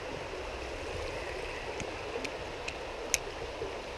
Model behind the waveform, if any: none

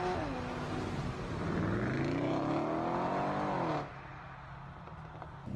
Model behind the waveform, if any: none